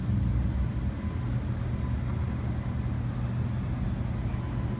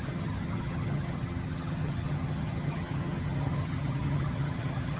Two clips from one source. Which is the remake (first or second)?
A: second